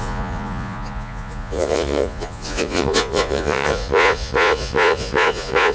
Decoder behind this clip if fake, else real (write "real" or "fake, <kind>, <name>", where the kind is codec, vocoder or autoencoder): fake, vocoder, Vocos